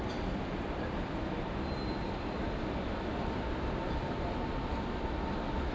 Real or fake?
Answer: real